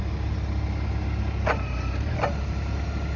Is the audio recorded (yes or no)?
yes